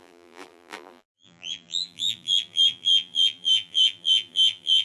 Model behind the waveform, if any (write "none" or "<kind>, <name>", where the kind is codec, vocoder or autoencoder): vocoder, BigVGAN v2